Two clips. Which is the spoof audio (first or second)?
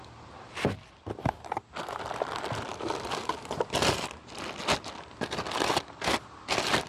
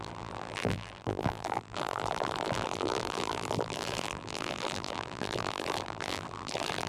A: second